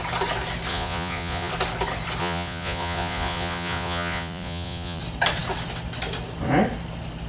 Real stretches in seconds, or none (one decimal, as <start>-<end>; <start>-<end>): 0.0-0.7; 1.5-2.2; 5.0-7.3